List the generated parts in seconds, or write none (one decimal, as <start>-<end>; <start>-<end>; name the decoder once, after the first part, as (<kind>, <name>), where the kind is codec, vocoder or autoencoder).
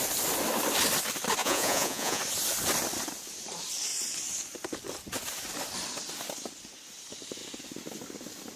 1.4-2.2 (vocoder, Vocos)